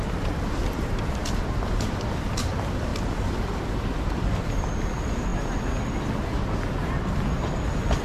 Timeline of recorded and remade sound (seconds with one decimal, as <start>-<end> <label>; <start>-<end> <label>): 0.0-8.0 recorded